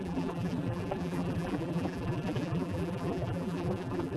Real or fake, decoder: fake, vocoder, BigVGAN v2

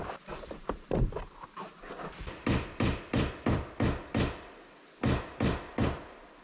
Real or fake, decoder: fake, vocoder, BigVGAN v2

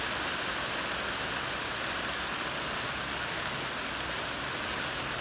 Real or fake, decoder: real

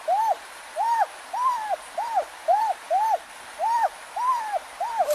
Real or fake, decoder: fake, vocoder, BigVGAN v2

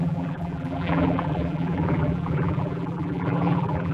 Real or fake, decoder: fake, vocoder, BigVGAN v2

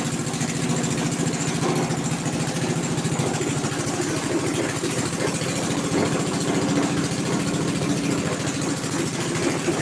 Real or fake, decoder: real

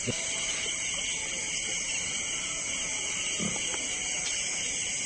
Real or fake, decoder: fake, vocoder, BigVGAN v2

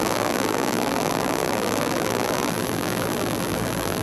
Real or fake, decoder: fake, vocoder, BigVGAN v2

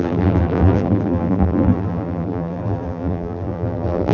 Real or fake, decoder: fake, vocoder, BigVGAN v2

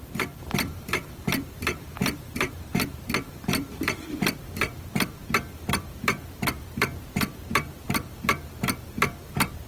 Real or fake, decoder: fake, vocoder, BigVGAN v2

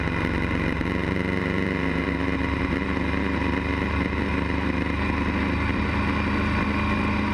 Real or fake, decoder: real